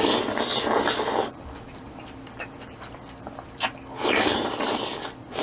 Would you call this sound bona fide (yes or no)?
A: no